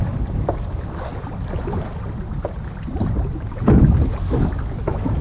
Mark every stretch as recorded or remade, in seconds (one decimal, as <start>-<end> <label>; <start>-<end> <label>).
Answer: 0.0-1.1 remade; 1.1-4.2 recorded; 4.2-5.2 remade